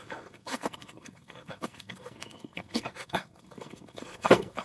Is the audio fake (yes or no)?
yes